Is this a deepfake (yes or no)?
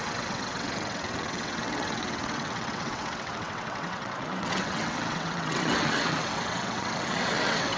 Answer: yes